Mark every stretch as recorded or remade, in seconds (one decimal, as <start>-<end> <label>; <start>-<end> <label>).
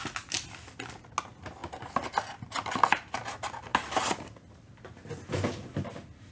0.0-6.3 recorded